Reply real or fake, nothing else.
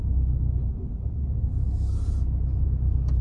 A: real